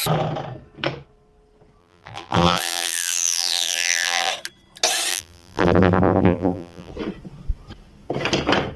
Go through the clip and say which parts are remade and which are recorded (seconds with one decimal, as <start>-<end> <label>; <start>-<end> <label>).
0.0-1.8 recorded; 1.8-4.3 remade; 4.3-5.1 recorded; 5.1-6.9 remade; 6.9-8.8 recorded